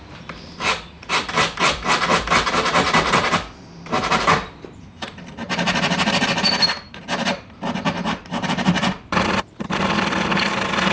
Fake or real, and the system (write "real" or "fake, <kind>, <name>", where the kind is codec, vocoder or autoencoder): fake, vocoder, BigVGAN v2